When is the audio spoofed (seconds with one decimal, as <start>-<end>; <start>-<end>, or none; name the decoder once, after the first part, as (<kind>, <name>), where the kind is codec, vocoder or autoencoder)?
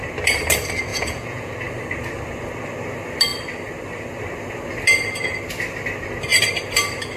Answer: 0.9-1.5 (vocoder, Vocos)